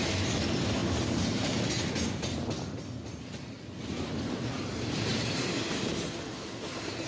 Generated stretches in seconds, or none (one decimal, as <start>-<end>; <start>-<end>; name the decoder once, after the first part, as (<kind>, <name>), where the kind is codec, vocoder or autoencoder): 0.8-1.7 (vocoder, BigVGAN v2); 5.1-5.9

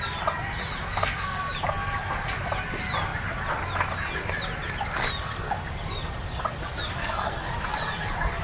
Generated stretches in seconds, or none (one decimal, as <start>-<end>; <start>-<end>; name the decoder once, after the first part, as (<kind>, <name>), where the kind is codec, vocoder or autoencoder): 0.8-1.4 (codec, SNAC); 7.0-7.5

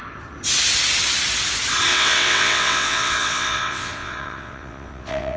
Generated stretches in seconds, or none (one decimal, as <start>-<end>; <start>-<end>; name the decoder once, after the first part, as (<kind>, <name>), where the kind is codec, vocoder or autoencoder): 1.9-5.4 (vocoder, WaveNeXt)